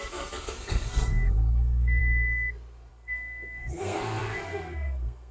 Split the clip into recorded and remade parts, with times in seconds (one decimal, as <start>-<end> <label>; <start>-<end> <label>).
0.0-2.0 remade; 2.0-2.9 recorded; 2.9-5.3 remade